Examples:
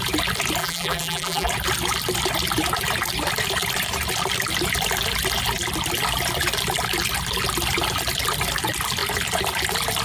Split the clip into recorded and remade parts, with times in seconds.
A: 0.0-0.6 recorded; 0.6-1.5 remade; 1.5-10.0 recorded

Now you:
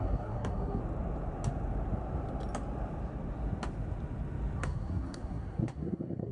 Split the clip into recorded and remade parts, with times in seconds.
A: 0.0-0.8 remade; 0.8-4.6 recorded; 4.6-6.3 remade

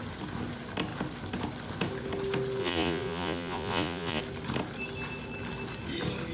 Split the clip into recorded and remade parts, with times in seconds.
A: 0.0-2.6 recorded; 2.6-4.2 remade; 4.2-6.3 recorded

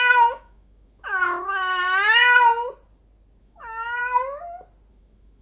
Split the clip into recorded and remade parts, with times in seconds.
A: 0.0-2.2 remade; 2.2-3.4 recorded; 3.4-4.0 remade; 4.0-4.9 recorded; 4.9-5.4 remade

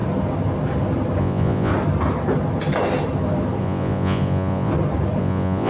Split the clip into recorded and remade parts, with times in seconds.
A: 0.0-1.2 recorded; 1.2-1.7 remade; 1.7-3.6 recorded; 3.6-4.7 remade; 4.7-5.2 recorded; 5.2-5.7 remade